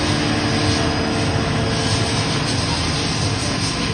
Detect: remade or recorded recorded